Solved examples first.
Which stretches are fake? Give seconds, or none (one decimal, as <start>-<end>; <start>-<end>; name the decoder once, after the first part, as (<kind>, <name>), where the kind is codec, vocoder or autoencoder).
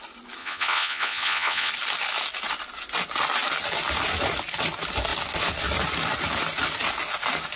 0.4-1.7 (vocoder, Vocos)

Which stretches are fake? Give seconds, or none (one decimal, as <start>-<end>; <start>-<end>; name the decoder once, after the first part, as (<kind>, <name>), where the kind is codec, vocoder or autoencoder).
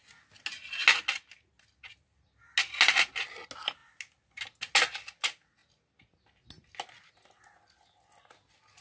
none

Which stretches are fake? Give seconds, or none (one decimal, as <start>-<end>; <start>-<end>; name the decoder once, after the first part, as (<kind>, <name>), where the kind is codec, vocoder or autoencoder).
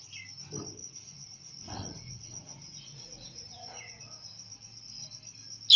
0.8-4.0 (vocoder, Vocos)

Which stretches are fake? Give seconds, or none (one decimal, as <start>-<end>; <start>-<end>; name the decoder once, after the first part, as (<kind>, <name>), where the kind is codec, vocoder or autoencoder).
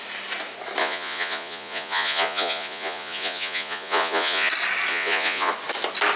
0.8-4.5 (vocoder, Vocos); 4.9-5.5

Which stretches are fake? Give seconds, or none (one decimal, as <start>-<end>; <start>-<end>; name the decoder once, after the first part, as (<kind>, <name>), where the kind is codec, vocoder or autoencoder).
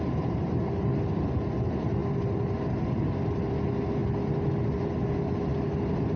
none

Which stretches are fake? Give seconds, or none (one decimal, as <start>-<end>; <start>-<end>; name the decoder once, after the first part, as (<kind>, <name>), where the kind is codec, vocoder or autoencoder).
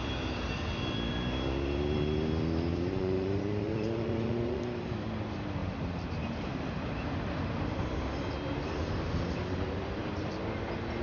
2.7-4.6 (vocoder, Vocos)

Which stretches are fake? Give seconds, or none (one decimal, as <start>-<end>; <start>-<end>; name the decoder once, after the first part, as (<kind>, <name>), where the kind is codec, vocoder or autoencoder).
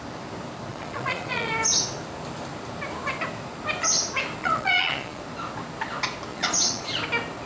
0.7-1.5 (vocoder, Vocos); 4.4-5.2; 6.3-6.9